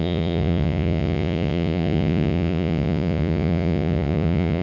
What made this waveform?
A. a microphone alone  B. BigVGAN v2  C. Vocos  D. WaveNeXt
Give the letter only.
C